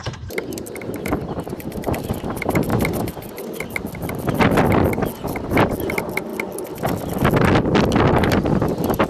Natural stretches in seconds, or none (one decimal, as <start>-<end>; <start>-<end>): 2.1-9.1